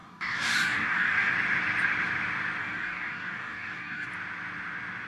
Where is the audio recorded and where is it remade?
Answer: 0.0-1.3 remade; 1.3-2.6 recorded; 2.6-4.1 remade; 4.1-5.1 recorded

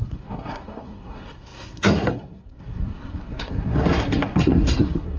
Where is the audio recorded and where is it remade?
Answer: 0.0-5.2 remade